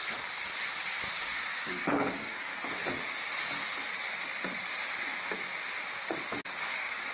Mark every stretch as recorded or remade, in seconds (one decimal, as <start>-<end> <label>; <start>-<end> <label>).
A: 0.0-1.2 recorded; 1.2-2.5 remade; 2.5-6.6 recorded; 6.6-7.1 remade